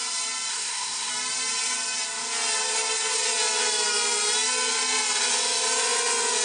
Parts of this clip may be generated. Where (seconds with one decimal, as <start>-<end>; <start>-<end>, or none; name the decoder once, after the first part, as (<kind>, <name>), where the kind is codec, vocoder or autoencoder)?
0.5-1.1 (codec, SNAC)